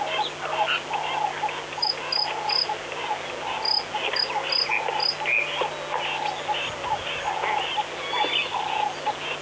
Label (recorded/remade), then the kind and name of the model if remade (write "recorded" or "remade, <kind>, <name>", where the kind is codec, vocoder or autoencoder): recorded